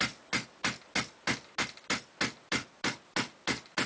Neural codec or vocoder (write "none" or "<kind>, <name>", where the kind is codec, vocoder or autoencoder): none